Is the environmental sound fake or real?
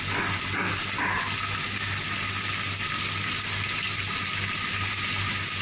real